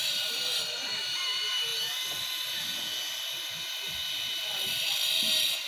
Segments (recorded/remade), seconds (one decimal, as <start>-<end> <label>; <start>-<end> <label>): 0.0-5.7 recorded

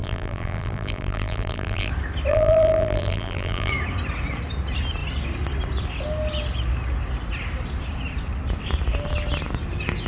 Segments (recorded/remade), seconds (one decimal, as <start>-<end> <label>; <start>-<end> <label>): 0.0-1.9 remade; 1.9-2.3 recorded; 2.3-3.7 remade; 3.7-10.1 recorded

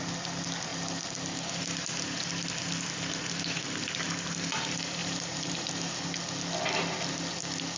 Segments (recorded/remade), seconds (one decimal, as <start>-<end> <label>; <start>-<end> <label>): 0.0-5.0 recorded; 5.0-5.7 remade; 5.7-7.8 recorded

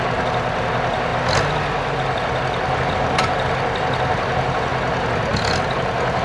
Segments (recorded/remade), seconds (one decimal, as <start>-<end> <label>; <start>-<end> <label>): 0.0-6.2 recorded